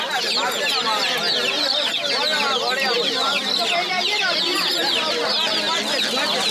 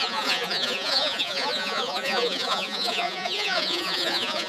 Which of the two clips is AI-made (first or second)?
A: second